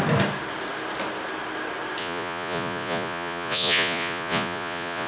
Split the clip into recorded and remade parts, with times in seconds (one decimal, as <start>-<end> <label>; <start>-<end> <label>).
0.0-2.0 recorded; 2.0-5.1 remade